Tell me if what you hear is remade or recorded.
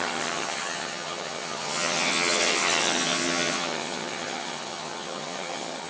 remade